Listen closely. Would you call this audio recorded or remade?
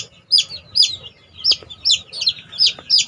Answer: recorded